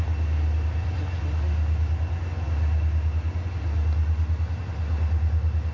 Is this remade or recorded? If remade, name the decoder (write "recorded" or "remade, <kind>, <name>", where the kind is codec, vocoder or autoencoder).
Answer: recorded